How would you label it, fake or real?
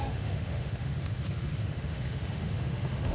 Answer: fake